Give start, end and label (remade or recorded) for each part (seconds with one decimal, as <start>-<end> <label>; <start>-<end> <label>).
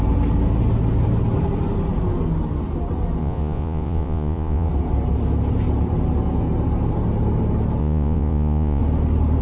0.0-3.2 recorded; 3.2-4.7 remade; 4.7-7.8 recorded; 7.8-8.8 remade; 8.8-9.4 recorded